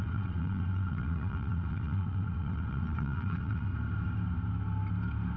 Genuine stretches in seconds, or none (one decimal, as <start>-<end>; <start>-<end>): 3.7-5.4